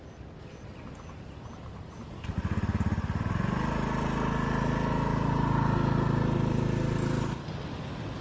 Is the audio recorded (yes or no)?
yes